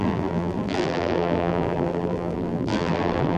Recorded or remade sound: remade